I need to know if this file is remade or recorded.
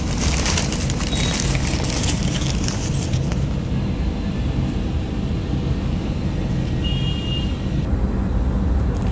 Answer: recorded